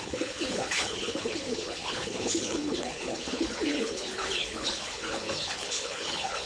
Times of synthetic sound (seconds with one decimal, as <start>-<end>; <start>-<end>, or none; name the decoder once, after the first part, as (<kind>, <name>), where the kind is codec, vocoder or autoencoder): 0.0-6.5 (codec, HILCodec)